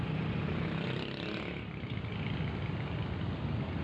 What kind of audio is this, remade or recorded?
recorded